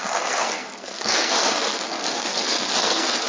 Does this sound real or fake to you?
fake